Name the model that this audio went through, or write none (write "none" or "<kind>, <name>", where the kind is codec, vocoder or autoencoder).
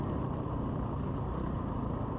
none